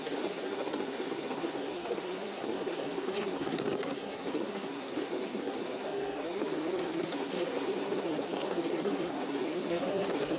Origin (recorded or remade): remade